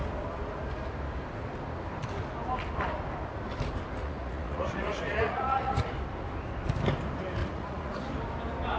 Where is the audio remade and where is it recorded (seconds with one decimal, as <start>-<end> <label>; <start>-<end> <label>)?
0.0-4.0 recorded; 4.0-5.9 remade; 5.9-7.4 recorded; 7.4-8.1 remade; 8.1-8.8 recorded